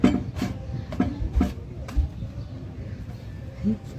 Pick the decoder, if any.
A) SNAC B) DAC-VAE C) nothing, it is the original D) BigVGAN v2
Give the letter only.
C